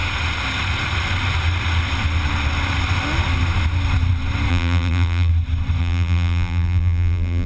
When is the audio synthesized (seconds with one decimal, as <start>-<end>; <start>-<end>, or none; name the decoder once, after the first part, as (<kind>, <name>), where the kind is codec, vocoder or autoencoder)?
4.5-5.3 (vocoder, BigVGAN v2); 5.8-7.5